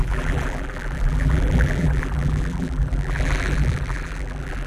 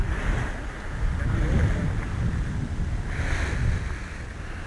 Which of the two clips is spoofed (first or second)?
first